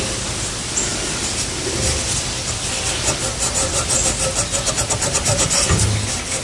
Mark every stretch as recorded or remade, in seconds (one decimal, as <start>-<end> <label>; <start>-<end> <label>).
0.0-6.4 recorded